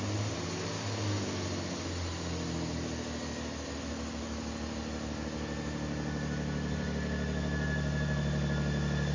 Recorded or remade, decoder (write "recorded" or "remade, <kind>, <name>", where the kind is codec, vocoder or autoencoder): recorded